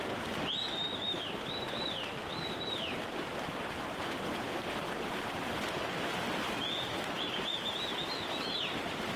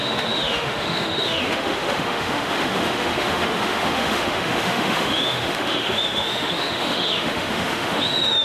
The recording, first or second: first